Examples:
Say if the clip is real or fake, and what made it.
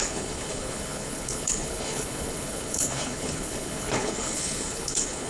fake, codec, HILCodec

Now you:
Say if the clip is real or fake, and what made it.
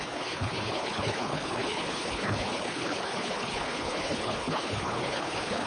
fake, codec, HILCodec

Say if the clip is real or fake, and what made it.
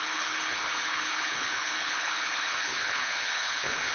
fake, codec, HILCodec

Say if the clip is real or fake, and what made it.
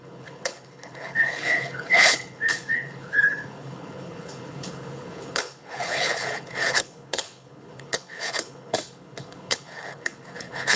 fake, codec, HILCodec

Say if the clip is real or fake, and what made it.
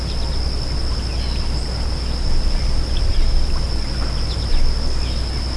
real